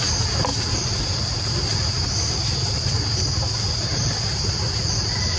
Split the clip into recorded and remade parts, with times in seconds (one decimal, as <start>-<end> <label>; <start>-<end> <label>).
0.0-5.4 recorded